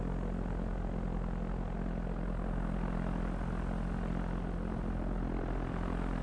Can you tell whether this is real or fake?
real